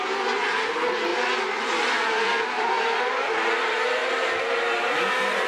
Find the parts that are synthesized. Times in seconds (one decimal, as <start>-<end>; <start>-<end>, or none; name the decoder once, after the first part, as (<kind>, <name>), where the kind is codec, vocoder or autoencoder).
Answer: 1.1-4.4 (vocoder, BigVGAN v2)